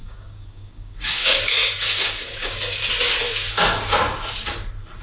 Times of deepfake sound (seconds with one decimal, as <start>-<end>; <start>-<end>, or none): 0.0-2.8